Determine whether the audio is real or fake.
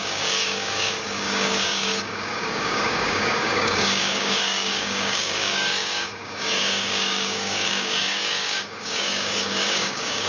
fake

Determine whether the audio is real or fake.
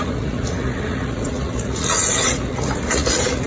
fake